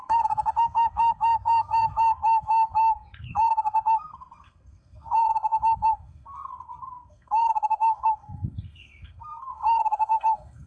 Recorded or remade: remade